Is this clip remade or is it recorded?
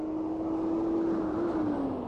recorded